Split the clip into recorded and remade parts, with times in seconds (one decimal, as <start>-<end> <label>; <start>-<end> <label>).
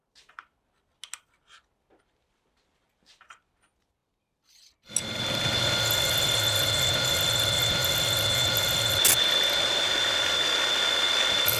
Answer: 0.0-11.6 recorded